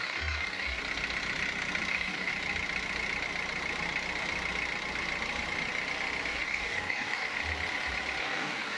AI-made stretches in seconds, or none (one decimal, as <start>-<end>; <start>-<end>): 0.0-0.8; 1.9-2.3; 6.3-7.4; 8.2-8.8